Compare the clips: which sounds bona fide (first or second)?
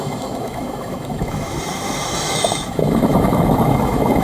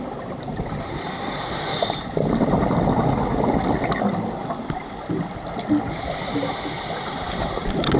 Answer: second